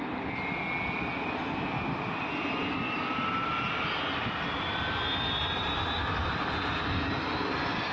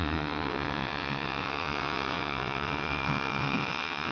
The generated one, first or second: second